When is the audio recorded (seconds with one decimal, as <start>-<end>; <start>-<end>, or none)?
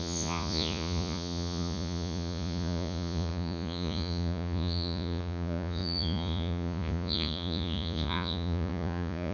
none